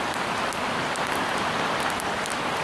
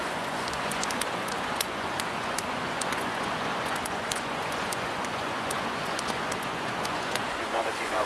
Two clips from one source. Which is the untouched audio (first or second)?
first